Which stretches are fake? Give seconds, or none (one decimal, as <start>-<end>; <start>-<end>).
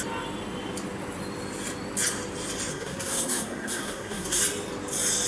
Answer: 2.7-4.4